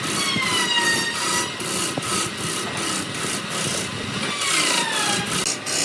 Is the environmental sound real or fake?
real